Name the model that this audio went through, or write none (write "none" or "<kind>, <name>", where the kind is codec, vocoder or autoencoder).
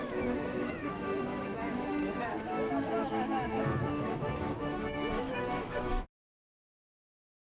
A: autoencoder, DAC-VAE